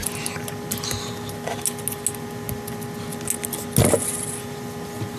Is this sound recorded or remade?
recorded